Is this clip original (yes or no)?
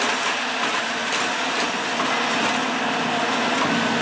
yes